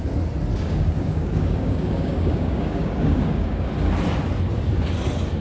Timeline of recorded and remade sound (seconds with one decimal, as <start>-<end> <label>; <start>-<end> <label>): 0.0-0.5 recorded; 0.5-3.7 remade; 3.7-5.4 recorded